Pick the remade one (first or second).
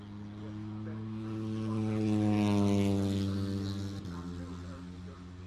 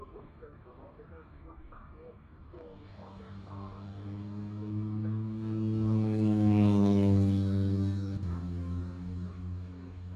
second